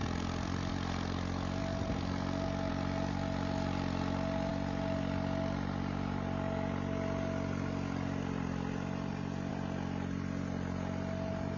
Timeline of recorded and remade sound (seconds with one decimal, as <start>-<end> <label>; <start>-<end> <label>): 0.0-11.6 recorded

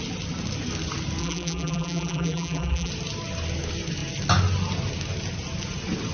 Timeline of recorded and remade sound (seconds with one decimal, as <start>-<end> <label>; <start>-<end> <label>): 0.0-1.2 recorded; 1.2-2.9 remade; 2.9-6.1 recorded

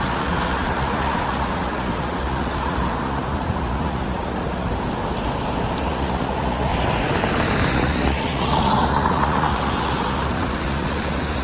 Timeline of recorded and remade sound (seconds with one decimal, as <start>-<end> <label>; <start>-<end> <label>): 0.0-4.7 remade; 4.7-5.8 recorded; 5.8-6.7 remade; 6.7-7.7 recorded; 7.7-11.4 remade

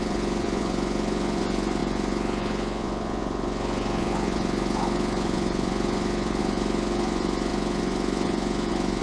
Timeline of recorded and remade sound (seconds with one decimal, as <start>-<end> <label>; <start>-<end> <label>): 0.0-9.0 remade